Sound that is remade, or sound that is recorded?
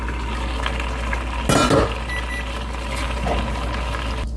recorded